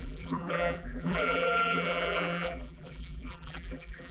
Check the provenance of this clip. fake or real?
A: fake